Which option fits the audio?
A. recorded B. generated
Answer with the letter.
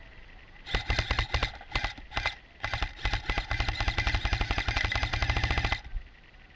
A